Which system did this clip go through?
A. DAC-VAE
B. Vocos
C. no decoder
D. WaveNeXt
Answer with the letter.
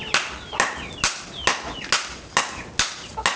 C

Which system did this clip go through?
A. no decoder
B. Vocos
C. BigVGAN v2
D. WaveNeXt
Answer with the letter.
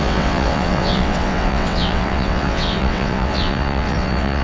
D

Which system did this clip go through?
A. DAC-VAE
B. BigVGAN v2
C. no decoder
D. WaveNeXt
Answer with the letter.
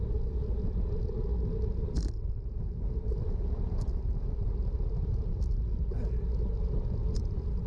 C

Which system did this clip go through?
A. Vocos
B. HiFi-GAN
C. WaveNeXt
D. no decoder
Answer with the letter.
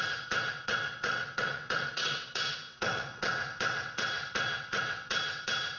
C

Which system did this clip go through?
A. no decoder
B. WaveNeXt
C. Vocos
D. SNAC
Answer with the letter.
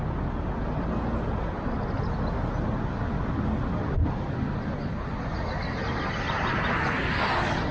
A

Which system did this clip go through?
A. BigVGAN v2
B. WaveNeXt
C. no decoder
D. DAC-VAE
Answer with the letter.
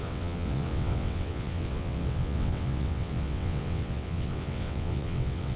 B